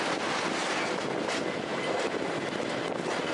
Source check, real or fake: real